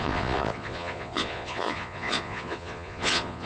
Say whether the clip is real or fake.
fake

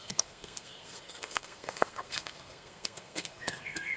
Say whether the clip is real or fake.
fake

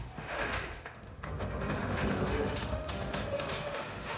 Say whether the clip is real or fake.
fake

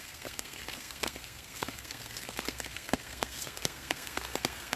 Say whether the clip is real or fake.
fake